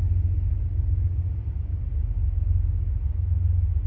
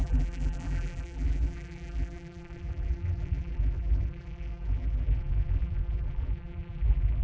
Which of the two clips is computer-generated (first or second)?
second